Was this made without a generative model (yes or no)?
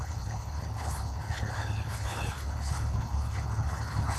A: no